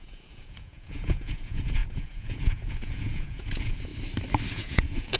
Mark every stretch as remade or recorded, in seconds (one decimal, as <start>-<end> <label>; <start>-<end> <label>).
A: 0.0-3.9 remade; 3.9-4.5 recorded; 4.5-5.2 remade